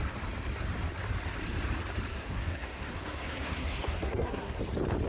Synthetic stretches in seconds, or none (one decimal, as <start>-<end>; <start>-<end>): 2.1-4.6